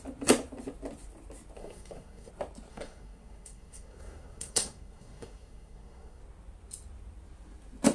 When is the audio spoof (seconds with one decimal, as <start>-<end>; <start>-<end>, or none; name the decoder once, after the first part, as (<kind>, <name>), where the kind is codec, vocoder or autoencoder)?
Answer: 1.6-2.3 (codec, SNAC); 2.7-6.2